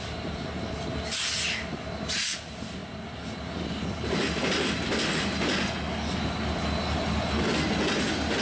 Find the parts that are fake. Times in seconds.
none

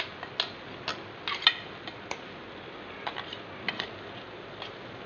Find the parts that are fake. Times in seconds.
none

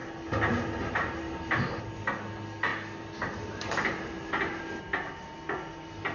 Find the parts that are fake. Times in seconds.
none